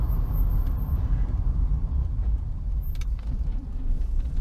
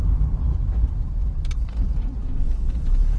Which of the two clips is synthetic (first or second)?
first